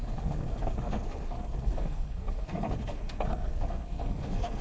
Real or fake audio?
fake